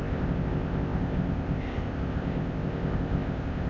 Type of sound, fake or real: fake